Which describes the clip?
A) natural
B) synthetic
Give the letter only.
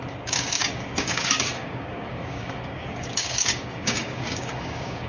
B